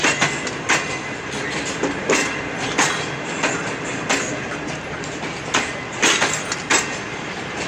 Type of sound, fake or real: real